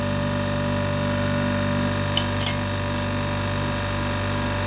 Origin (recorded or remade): recorded